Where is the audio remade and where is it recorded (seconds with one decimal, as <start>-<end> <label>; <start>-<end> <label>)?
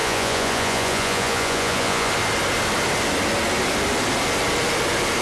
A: 0.0-2.1 remade; 2.1-5.2 recorded